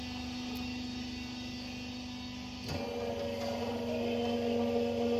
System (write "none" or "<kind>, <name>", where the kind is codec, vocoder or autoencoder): none